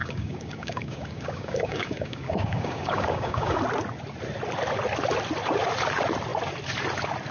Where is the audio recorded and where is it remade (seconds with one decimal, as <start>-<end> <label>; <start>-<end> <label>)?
0.0-3.6 remade; 3.6-7.3 recorded